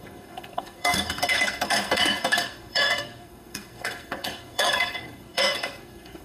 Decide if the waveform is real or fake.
fake